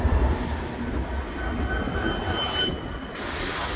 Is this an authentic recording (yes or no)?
yes